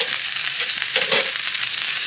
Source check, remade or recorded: remade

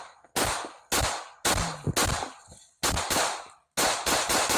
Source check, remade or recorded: recorded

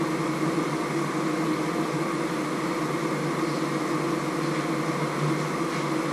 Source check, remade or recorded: recorded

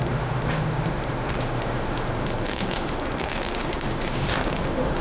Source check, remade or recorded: remade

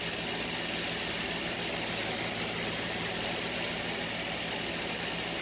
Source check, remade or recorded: recorded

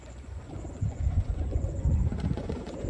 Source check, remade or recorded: remade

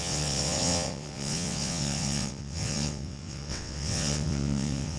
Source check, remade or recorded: remade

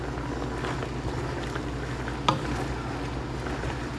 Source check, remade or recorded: recorded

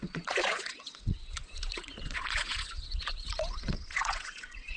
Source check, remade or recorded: remade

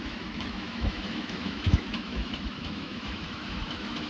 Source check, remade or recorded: remade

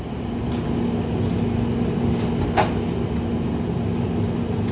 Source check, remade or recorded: recorded